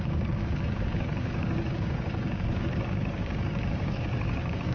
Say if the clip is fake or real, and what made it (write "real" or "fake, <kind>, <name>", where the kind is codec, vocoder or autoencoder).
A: fake, codec, DAC